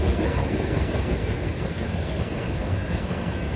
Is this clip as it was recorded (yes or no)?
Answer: no